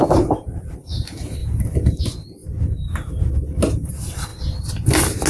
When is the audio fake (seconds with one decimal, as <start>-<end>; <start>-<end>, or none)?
0.0-1.4; 2.0-2.4; 3.9-4.3